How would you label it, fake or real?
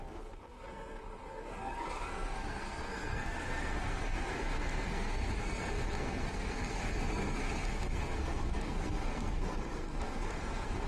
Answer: fake